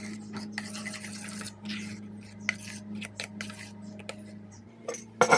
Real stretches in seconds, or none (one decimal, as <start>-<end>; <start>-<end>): 0.0-5.4